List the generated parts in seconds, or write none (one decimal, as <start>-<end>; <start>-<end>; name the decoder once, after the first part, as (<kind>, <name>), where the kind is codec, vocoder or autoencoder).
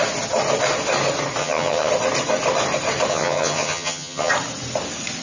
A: 1.4-1.9 (vocoder, HiFi-GAN); 3.1-4.3